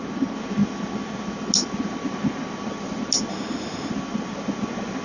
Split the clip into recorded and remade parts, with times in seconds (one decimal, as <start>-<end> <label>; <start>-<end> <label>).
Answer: 0.0-3.3 recorded; 3.3-3.9 remade; 3.9-5.0 recorded